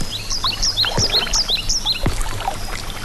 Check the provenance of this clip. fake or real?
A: real